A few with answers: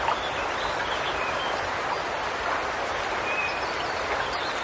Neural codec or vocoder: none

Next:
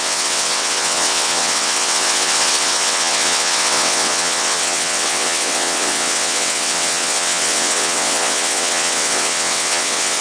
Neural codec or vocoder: vocoder, WaveNeXt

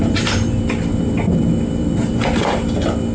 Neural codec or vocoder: none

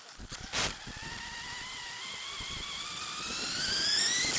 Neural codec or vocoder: none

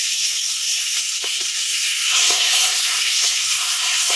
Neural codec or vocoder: codec, SNAC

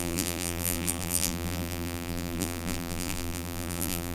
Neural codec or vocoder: vocoder, BigVGAN v2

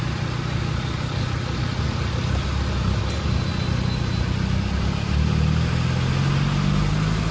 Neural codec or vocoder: none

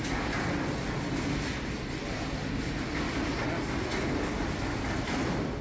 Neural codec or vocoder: none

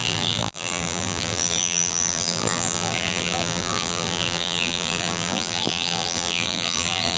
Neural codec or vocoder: vocoder, BigVGAN v2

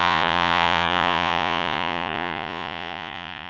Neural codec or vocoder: vocoder, Vocos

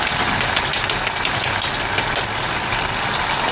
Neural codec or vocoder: none